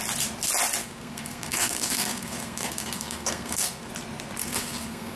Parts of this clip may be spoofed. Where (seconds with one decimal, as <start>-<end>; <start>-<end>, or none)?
0.8-3.9; 4.4-5.2